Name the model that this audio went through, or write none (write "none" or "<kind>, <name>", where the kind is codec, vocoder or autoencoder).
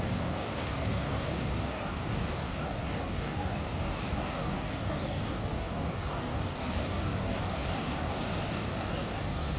codec, DAC